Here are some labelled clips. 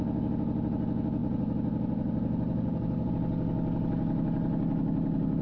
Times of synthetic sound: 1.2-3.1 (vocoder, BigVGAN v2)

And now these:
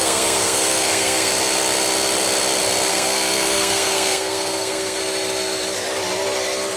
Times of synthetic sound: 0.0-1.3 (codec, SNAC); 2.9-5.0

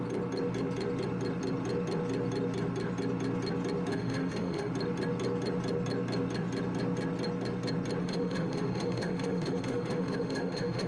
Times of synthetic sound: 3.9-4.7 (autoencoder, DAC-VAE); 8.0-10.9

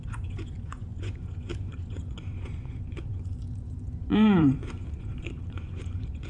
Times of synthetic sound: 0.0-6.3 (vocoder, Vocos)

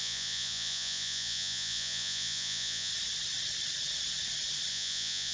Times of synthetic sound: 0.0-2.9 (vocoder, Vocos); 4.7-5.3